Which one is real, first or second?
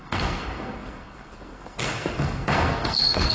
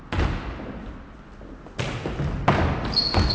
second